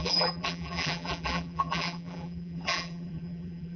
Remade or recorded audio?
remade